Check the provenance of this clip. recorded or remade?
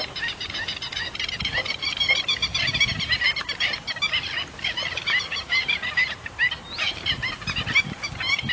recorded